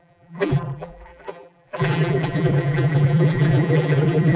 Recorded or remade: remade